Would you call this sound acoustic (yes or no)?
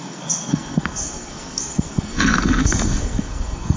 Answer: no